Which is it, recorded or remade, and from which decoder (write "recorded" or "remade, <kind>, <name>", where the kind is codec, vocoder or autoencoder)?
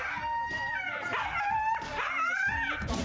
recorded